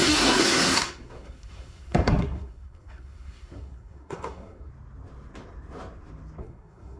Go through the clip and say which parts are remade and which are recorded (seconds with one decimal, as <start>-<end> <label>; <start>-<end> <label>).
0.0-4.7 remade; 4.7-6.4 recorded; 6.4-7.0 remade